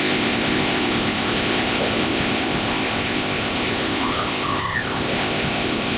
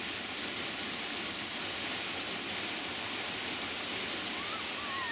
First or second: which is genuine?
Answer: second